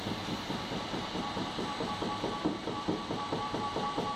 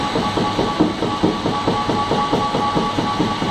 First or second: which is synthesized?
first